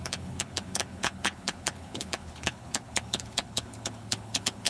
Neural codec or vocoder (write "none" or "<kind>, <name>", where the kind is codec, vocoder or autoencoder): codec, HILCodec